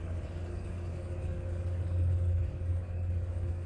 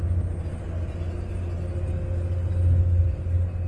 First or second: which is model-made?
first